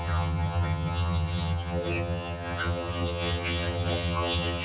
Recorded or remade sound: remade